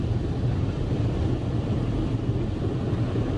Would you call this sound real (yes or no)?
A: yes